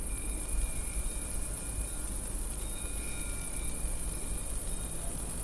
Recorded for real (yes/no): yes